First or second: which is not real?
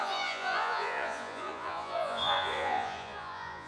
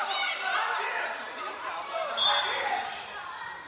first